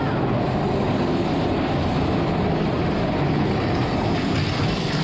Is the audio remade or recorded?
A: recorded